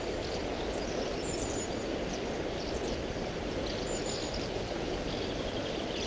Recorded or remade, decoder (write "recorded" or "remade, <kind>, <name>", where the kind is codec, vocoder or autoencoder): recorded